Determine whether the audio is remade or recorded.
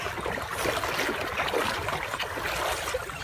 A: recorded